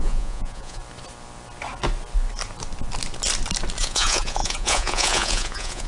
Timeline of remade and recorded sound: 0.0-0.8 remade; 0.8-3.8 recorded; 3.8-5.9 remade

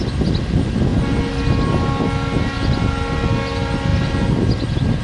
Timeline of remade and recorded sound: 0.0-5.0 recorded

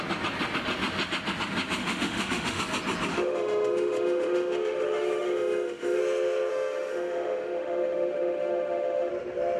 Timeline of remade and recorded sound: 0.0-1.8 recorded; 1.8-2.6 remade; 2.6-3.1 recorded; 3.1-6.0 remade; 6.0-6.5 recorded; 6.5-9.1 remade; 9.1-9.6 recorded

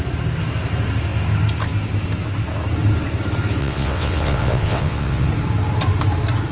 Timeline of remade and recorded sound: 0.0-3.6 recorded; 3.6-5.3 remade; 5.3-6.5 recorded